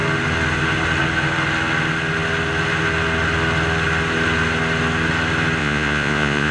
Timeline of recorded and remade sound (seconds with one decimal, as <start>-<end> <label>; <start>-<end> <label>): 0.0-5.6 recorded; 5.6-6.5 remade

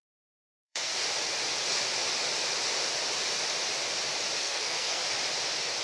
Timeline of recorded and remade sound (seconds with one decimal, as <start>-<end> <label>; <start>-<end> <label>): 0.0-0.9 remade; 0.9-4.4 recorded; 4.4-5.0 remade; 5.0-5.8 recorded

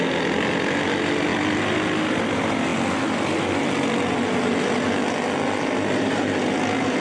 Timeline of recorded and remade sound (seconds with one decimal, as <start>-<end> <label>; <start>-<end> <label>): 0.0-7.0 recorded

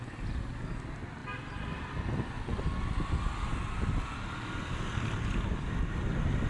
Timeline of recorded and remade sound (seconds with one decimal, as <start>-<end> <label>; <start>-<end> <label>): 0.0-6.5 recorded

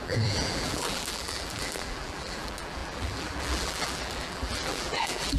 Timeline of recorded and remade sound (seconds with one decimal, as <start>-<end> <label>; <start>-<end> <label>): 0.0-5.4 remade

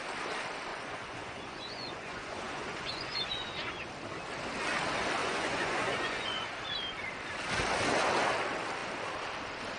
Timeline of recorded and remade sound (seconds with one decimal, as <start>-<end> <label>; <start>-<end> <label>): 0.0-0.7 recorded; 0.7-3.9 remade; 3.9-5.2 recorded; 5.2-6.5 remade; 6.5-9.8 recorded

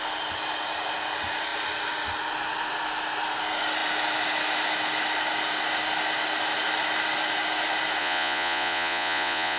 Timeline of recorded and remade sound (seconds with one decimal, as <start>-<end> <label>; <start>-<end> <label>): 0.0-8.0 recorded; 8.0-9.6 remade